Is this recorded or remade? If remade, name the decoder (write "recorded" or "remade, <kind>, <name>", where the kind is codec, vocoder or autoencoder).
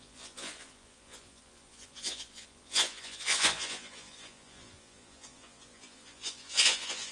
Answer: remade, vocoder, Vocos